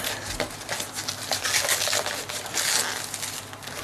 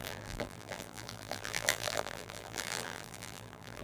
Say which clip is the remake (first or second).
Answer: second